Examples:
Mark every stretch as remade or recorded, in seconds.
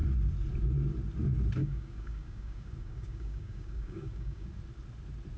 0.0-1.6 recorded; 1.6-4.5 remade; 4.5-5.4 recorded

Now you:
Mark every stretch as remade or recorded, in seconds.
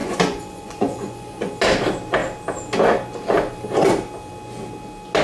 0.0-1.5 remade; 1.5-5.2 recorded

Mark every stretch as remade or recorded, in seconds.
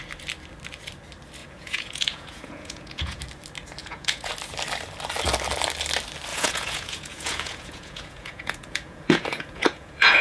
0.0-1.4 recorded; 1.4-3.2 remade; 3.2-3.8 recorded; 3.8-4.3 remade; 4.3-6.3 recorded; 6.3-10.2 remade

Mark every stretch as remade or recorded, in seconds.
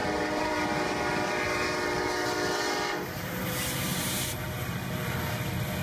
0.0-3.5 remade; 3.5-3.9 recorded; 3.9-5.2 remade; 5.2-5.8 recorded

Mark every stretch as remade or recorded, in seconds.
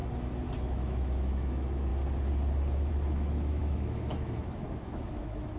0.0-0.6 recorded; 0.6-1.9 remade; 1.9-2.9 recorded; 2.9-5.6 remade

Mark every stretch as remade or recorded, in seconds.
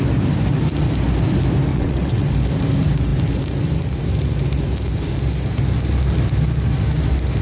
0.0-1.7 recorded; 1.7-2.3 remade; 2.3-7.4 recorded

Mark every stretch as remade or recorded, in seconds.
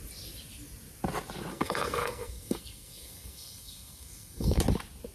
0.0-1.5 recorded; 1.5-4.6 remade; 4.6-5.1 recorded